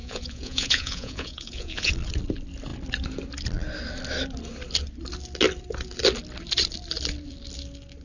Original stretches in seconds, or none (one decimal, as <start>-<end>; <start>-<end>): 1.9-8.0